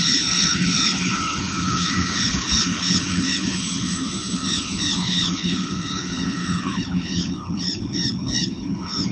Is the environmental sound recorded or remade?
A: remade